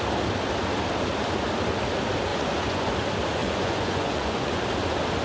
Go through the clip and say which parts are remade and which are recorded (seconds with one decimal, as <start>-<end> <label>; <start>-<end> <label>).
0.0-2.3 recorded; 2.3-2.9 remade; 2.9-3.4 recorded; 3.4-4.6 remade; 4.6-5.2 recorded